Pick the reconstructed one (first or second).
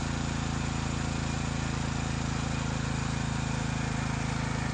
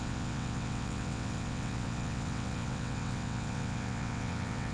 second